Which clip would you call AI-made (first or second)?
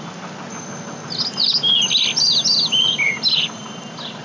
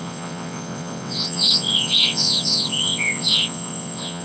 second